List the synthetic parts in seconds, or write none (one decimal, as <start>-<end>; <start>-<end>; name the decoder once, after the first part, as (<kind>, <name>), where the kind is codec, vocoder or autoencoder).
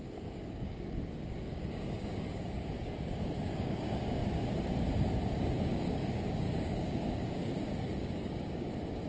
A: 0.0-4.2 (codec, DAC); 5.6-9.1